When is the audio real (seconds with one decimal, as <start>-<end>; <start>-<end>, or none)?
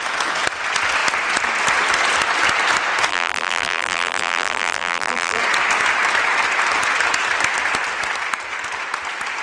0.0-3.1; 5.4-9.4